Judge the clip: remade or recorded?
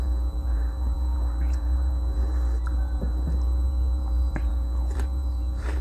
remade